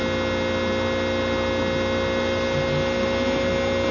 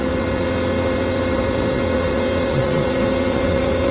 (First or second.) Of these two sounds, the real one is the first